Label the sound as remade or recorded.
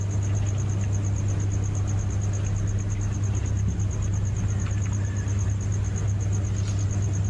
recorded